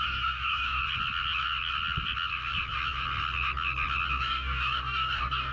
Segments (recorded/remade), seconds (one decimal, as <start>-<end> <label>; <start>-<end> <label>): 0.0-0.8 remade; 0.8-4.1 recorded; 4.1-5.5 remade